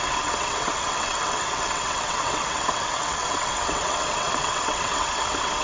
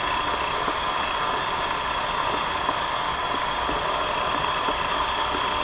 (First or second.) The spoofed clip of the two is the first